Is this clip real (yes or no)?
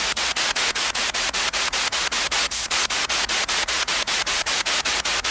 no